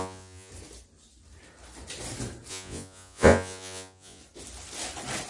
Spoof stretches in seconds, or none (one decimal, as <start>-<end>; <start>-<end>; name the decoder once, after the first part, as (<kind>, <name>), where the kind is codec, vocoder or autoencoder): 0.0-0.5 (vocoder, Vocos); 2.5-4.2